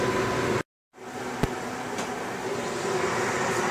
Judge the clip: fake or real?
real